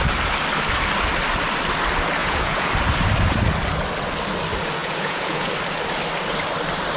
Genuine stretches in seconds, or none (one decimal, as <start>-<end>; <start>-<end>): 0.0-2.2; 2.7-4.8; 5.5-7.0